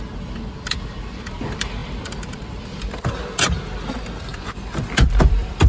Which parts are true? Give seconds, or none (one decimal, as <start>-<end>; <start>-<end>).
0.0-1.8; 3.1-4.3